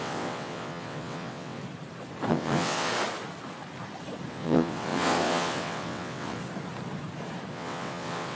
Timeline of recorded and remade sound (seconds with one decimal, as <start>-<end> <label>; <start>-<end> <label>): 0.0-1.6 remade; 1.6-2.3 recorded; 2.3-2.9 remade; 2.9-4.3 recorded; 4.3-6.4 remade; 6.4-7.5 recorded; 7.5-8.3 remade